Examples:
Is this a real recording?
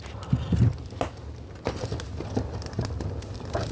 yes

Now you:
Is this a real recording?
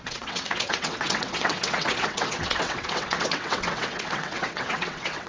no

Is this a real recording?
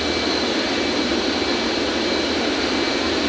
yes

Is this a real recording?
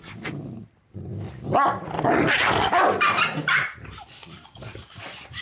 yes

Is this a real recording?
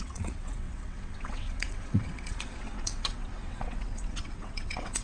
no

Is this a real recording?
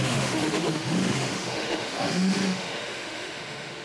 no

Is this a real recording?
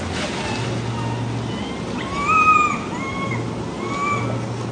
yes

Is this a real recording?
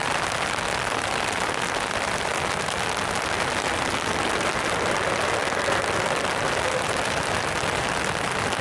yes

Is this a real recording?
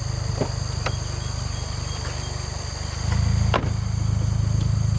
yes